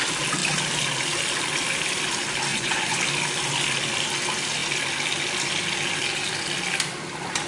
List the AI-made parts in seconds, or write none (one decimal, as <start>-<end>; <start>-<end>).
2.5-3.0